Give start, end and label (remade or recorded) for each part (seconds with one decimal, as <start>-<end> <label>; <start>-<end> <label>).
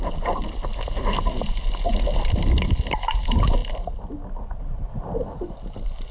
0.0-6.1 recorded